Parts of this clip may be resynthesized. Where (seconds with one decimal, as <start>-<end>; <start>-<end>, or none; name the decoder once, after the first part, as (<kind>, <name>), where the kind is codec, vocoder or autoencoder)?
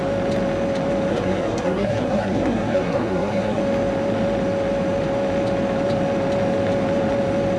1.1-3.6 (codec, SNAC)